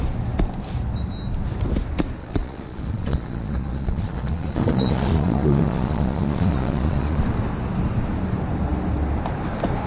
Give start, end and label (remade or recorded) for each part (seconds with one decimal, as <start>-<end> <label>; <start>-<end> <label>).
0.0-2.2 recorded; 2.2-7.2 remade; 7.2-9.9 recorded

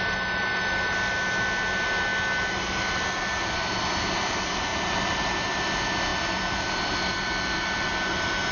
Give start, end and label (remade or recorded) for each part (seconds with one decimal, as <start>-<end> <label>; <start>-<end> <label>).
0.0-8.5 recorded

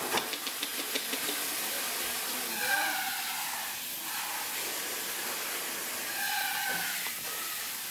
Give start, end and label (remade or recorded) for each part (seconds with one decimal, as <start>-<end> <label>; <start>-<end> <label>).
0.0-7.9 recorded

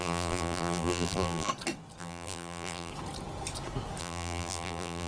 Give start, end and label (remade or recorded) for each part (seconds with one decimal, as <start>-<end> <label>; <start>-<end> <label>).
0.0-1.5 remade; 1.5-2.0 recorded; 2.0-2.9 remade; 2.9-4.0 recorded; 4.0-5.1 remade

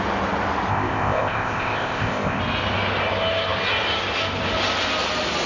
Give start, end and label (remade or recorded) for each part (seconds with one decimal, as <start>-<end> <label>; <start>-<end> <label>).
0.0-0.7 recorded; 0.7-2.4 remade; 2.4-5.5 recorded

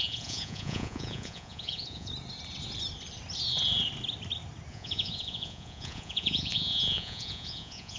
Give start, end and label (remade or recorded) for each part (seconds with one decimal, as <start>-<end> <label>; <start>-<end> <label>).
0.0-2.1 remade; 2.1-4.7 recorded; 4.7-8.0 remade

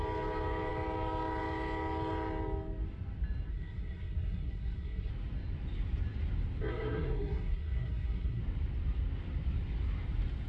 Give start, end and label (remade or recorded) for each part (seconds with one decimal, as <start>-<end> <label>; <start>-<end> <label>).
0.0-3.5 recorded; 3.5-5.1 remade; 5.1-6.7 recorded; 6.7-8.4 remade; 8.4-10.5 recorded

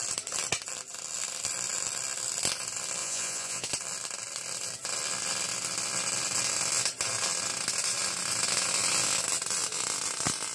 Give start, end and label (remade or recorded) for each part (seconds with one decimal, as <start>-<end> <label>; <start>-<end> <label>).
0.0-3.0 recorded; 3.0-3.7 remade; 3.7-10.5 recorded